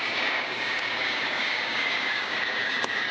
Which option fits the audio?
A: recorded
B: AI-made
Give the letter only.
B